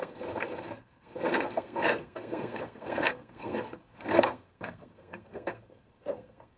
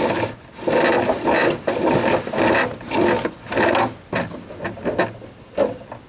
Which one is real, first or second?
second